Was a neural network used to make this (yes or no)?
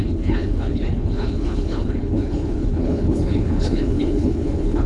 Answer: yes